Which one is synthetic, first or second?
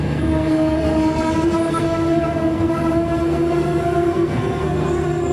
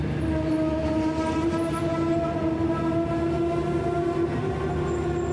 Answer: first